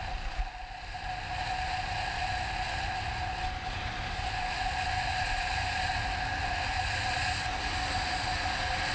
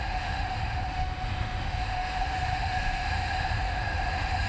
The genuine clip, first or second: first